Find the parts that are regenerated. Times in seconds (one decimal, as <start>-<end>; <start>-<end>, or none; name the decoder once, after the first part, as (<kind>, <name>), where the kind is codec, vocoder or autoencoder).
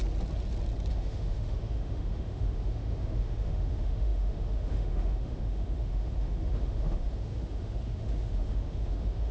0.9-9.3 (autoencoder, DAC-VAE)